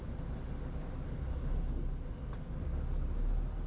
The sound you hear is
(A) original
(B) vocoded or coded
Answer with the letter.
A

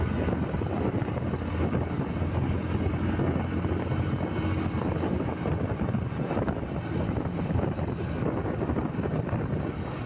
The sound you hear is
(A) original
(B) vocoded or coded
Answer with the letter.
A